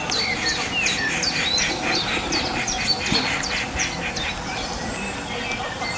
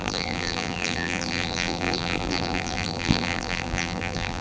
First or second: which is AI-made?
second